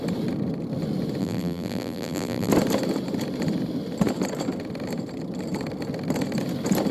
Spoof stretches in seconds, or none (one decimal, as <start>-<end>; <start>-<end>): 1.2-2.5